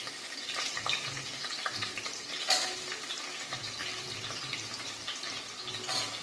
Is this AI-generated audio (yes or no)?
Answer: no